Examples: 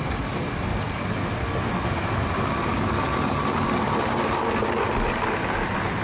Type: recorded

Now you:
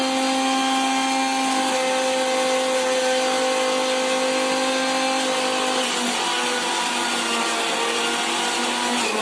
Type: recorded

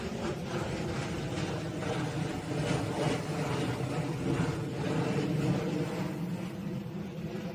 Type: recorded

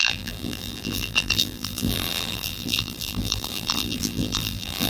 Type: remade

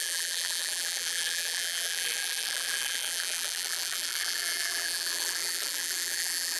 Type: remade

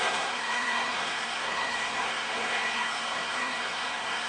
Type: remade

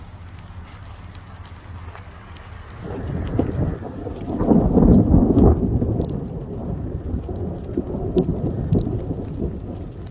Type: recorded